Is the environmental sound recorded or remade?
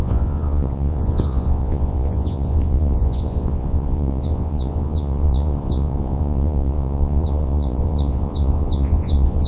remade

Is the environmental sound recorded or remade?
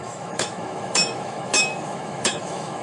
remade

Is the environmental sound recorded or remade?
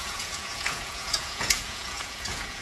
remade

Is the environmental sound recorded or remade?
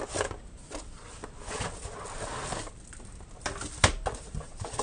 recorded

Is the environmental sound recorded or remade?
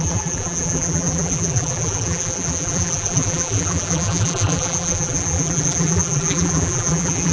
remade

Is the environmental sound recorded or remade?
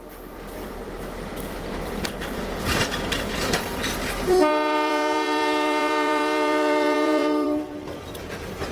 remade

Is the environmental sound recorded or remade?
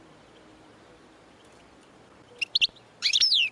remade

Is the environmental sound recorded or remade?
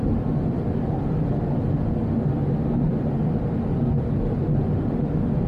recorded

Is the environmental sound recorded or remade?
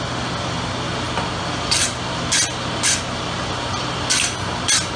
recorded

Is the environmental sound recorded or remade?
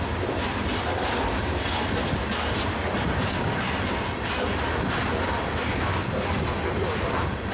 recorded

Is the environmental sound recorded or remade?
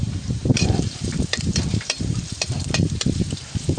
remade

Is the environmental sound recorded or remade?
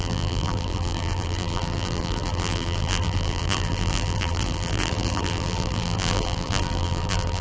remade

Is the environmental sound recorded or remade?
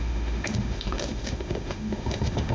remade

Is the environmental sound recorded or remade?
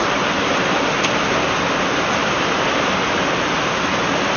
recorded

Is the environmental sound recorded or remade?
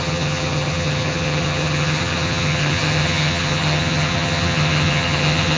remade